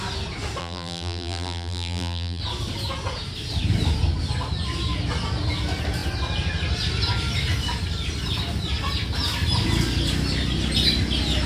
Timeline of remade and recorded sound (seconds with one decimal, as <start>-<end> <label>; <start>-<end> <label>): 0.0-0.6 recorded; 0.6-2.4 remade; 2.4-11.5 recorded